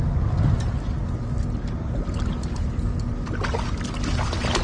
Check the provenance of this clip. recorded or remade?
recorded